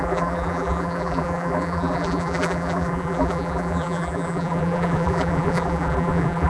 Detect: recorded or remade remade